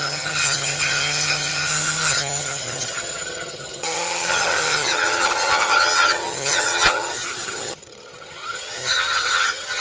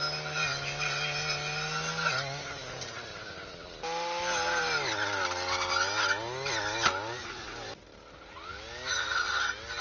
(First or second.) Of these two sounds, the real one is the second